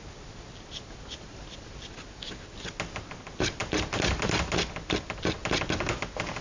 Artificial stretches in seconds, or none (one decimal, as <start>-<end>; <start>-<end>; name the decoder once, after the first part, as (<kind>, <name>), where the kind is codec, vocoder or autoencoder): none